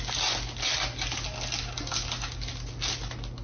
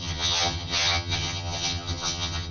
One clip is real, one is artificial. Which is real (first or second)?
first